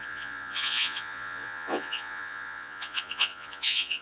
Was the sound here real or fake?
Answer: fake